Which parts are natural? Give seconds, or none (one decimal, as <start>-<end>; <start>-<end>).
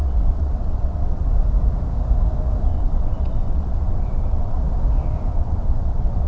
1.3-2.7; 4.6-5.3